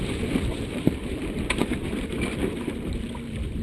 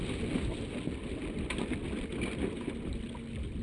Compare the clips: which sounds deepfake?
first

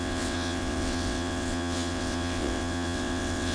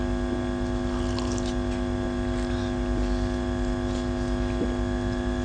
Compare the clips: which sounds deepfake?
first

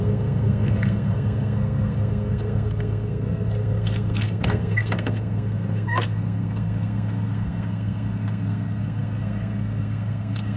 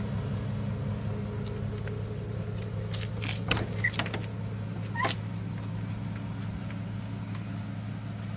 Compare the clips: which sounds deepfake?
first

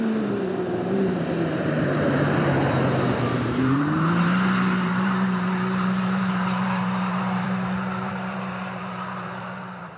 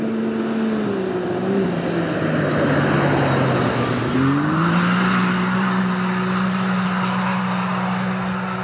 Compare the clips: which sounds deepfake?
first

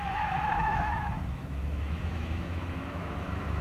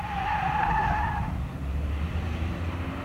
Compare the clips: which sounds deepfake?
first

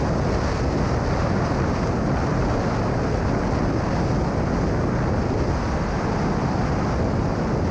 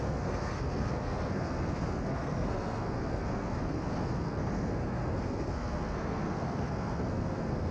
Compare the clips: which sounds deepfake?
second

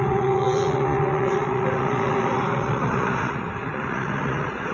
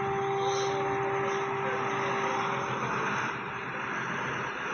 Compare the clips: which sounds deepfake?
first